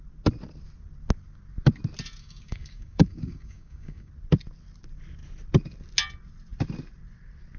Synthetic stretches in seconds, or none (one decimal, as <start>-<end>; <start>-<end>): 2.2-4.1